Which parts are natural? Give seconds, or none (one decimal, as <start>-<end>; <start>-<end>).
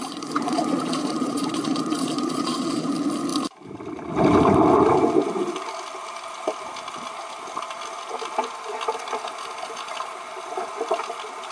2.9-11.5